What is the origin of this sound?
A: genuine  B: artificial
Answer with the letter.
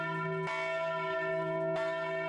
A